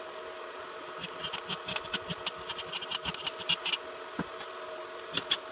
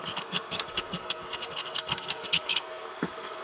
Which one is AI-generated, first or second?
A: second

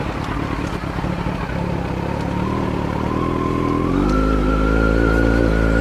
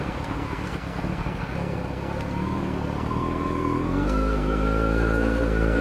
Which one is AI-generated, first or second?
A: second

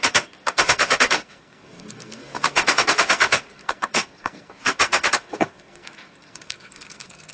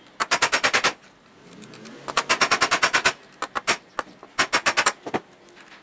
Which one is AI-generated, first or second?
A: first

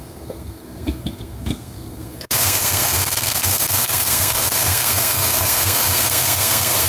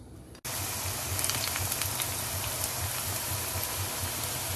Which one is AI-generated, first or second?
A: first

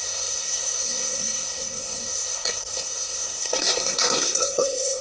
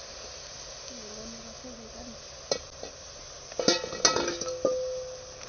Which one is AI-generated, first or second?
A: first